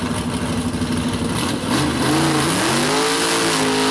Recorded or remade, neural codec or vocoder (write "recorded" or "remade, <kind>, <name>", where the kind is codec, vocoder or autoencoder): recorded